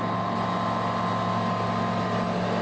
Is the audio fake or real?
real